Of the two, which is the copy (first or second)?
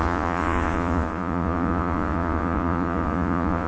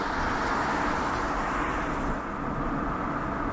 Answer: first